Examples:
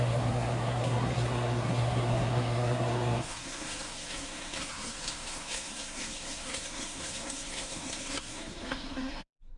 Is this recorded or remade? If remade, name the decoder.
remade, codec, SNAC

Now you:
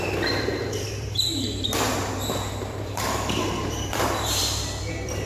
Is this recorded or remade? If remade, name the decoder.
remade, vocoder, BigVGAN v2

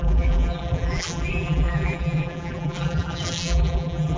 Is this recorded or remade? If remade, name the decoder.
remade, vocoder, BigVGAN v2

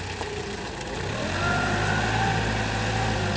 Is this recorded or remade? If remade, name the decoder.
recorded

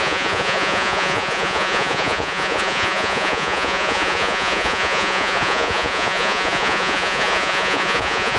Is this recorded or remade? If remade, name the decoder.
remade, vocoder, Vocos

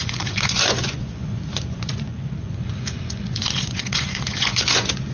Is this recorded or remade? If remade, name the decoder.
remade, vocoder, Vocos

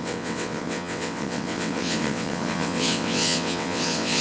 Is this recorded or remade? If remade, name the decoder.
remade, vocoder, WaveNeXt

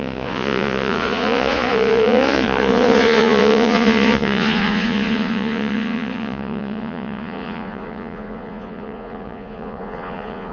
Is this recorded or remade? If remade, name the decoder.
remade, vocoder, Vocos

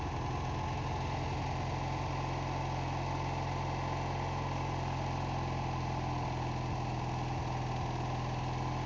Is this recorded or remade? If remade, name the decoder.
recorded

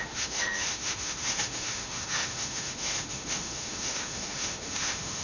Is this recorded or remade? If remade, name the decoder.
remade, autoencoder, DAC-VAE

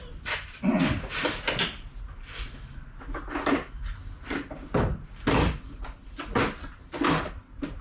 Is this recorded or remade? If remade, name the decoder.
recorded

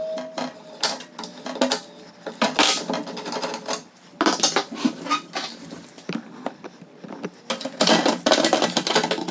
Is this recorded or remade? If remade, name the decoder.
recorded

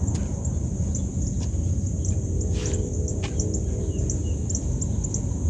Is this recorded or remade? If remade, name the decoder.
recorded